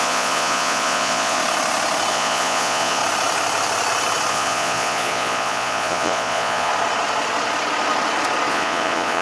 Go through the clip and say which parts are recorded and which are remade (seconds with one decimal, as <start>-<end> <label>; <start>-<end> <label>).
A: 0.0-1.4 remade; 1.4-2.1 recorded; 2.1-3.0 remade; 3.0-4.3 recorded; 4.3-6.7 remade; 6.7-8.5 recorded; 8.5-9.2 remade